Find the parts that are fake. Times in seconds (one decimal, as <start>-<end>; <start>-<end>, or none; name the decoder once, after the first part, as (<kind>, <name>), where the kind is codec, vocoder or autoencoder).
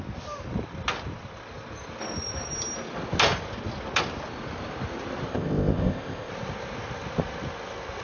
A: 5.3-6.3 (codec, ZipCodec)